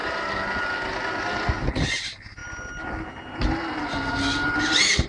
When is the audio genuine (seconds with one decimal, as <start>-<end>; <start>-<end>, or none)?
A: 0.0-5.1